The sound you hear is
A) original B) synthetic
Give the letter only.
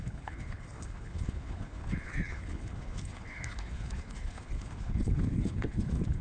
B